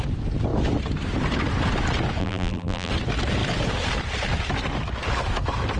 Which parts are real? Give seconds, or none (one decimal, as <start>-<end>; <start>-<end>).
0.0-2.2; 2.9-5.8